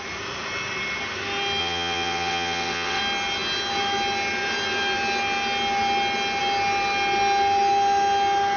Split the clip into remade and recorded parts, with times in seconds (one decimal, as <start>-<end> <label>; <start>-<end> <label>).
0.0-1.6 recorded; 1.6-3.0 remade; 3.0-8.6 recorded